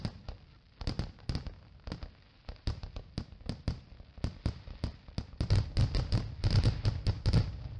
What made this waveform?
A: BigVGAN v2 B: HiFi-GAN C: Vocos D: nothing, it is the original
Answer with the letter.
D